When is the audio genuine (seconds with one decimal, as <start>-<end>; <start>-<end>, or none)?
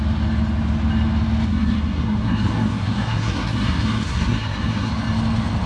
0.0-1.5; 4.9-5.7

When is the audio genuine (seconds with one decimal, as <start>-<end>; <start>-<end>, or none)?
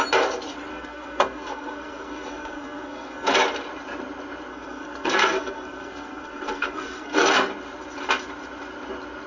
0.0-0.7; 3.3-4.5; 7.5-9.3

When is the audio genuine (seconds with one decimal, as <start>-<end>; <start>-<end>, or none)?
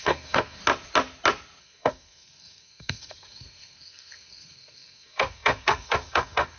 0.6-1.6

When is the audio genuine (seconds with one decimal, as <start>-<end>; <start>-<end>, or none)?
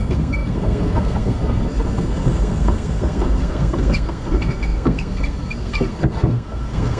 none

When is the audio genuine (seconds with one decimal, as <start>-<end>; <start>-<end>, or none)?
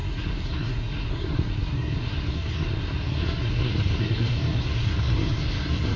none